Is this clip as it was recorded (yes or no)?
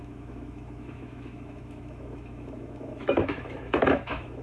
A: no